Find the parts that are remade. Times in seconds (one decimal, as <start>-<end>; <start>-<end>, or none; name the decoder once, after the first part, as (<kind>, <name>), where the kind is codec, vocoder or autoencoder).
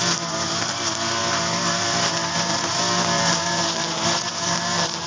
none